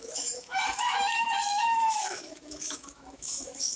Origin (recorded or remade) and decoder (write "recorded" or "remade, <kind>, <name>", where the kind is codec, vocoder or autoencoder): remade, autoencoder, DAC-VAE